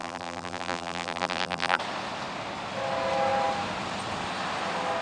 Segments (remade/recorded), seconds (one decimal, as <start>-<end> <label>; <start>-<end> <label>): 0.0-1.8 remade; 1.8-5.0 recorded